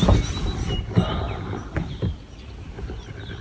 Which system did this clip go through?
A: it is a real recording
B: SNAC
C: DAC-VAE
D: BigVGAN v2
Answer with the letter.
A